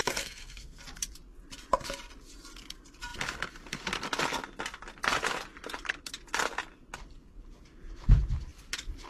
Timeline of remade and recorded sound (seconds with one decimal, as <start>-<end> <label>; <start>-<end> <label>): 0.0-0.8 remade; 0.8-9.1 recorded